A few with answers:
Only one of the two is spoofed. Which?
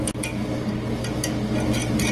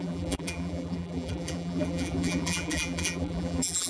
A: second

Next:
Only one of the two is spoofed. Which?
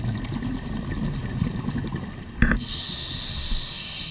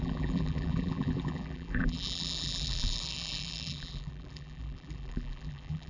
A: second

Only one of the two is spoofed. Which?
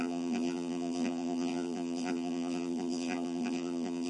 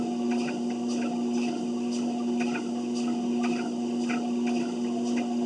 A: first